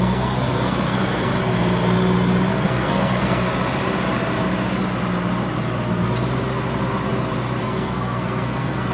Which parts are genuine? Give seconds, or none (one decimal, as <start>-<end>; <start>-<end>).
1.3-2.5; 3.5-7.6